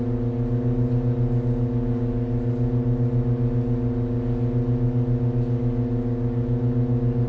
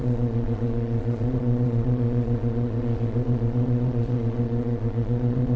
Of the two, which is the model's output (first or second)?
second